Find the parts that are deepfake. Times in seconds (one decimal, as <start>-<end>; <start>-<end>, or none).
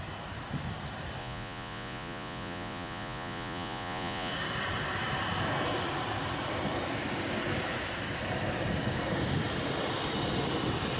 1.2-4.3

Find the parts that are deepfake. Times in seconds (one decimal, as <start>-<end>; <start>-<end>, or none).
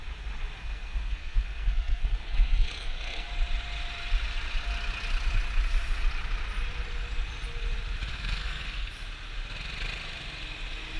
0.6-3.3; 8.1-8.9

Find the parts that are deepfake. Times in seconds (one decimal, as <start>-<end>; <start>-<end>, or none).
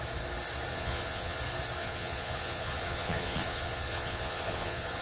0.7-1.4; 1.8-5.0